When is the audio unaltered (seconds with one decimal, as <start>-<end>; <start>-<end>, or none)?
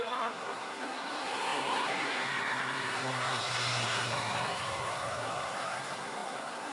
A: none